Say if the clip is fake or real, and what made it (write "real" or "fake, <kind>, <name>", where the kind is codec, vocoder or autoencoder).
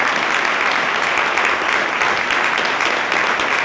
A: real